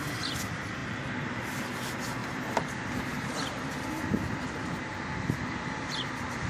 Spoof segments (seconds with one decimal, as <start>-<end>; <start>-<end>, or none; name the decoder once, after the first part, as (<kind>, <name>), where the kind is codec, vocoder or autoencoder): 2.2-6.1 (vocoder, BigVGAN v2)